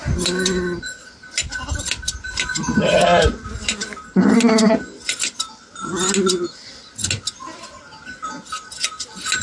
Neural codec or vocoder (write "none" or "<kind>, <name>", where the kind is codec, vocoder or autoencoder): none